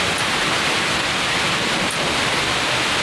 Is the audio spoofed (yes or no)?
no